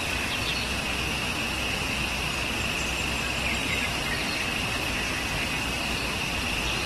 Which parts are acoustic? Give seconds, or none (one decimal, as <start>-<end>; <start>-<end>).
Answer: 0.0-0.7; 2.2-6.9